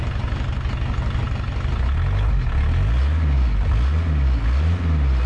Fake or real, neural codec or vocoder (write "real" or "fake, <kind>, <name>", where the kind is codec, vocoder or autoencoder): real